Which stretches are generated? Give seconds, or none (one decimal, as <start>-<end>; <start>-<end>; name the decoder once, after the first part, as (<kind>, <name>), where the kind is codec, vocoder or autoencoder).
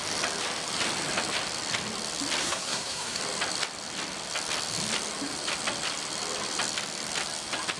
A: 2.4-3.2 (codec, SNAC)